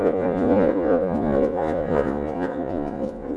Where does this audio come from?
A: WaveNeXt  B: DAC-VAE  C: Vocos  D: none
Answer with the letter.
C